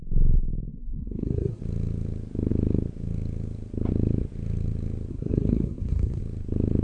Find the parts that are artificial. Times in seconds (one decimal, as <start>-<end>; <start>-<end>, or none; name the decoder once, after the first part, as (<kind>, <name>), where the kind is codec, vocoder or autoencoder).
0.7-1.6 (codec, SNAC); 5.1-6.2